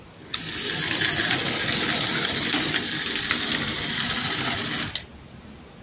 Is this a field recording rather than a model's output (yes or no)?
yes